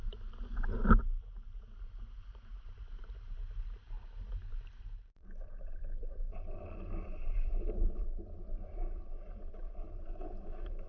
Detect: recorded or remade remade